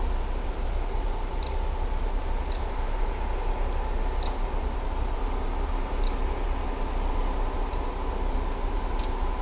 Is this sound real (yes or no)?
yes